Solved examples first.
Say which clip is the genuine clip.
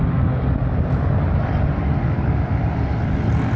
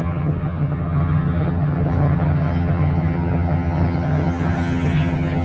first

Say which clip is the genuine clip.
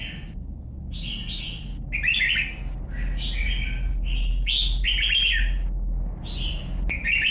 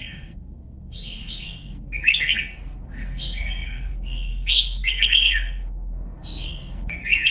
first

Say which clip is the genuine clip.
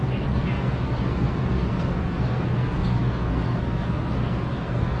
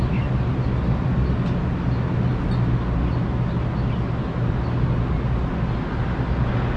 second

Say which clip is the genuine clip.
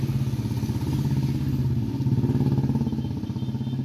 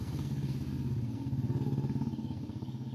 first